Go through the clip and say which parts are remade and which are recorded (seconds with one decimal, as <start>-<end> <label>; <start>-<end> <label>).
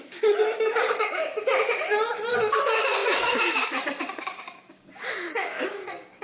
0.0-1.5 remade; 1.5-2.3 recorded; 2.3-6.2 remade